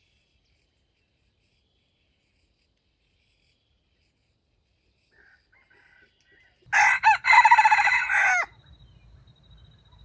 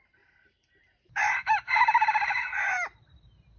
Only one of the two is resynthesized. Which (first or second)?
second